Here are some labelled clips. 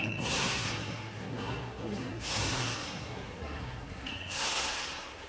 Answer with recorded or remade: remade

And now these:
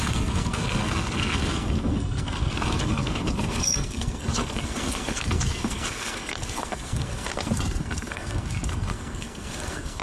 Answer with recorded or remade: remade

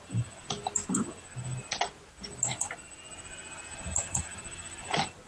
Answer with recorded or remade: recorded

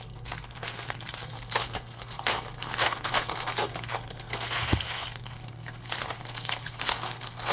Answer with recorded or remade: remade